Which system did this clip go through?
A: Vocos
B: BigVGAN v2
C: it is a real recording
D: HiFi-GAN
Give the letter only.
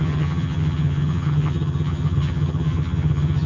D